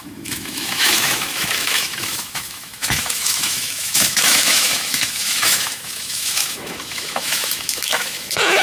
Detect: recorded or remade remade